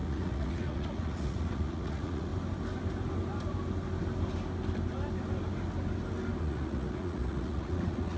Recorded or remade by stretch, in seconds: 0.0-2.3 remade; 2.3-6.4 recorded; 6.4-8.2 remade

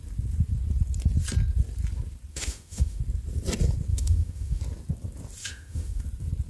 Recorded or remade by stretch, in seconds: 0.0-2.3 recorded; 2.3-3.0 remade; 3.0-3.9 recorded; 3.9-4.6 remade; 4.6-5.4 recorded; 5.4-6.0 remade; 6.0-6.5 recorded